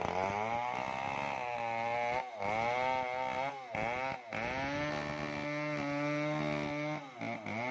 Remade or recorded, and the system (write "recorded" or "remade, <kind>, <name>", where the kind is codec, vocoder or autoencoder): recorded